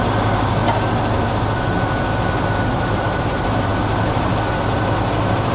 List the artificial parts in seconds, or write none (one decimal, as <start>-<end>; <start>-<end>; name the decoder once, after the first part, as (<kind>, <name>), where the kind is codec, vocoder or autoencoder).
0.0-0.6 (vocoder, BigVGAN v2); 2.7-3.7